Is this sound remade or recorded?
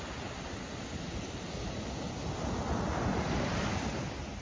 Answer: recorded